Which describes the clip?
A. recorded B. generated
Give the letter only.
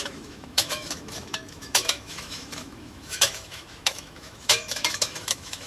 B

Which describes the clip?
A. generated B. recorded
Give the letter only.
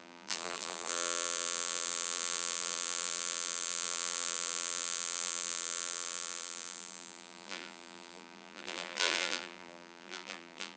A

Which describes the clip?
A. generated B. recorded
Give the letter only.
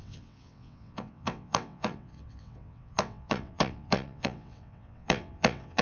A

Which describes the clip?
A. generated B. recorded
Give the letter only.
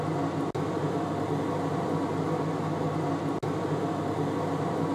B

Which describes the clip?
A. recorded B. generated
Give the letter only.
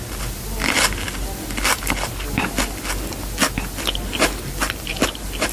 A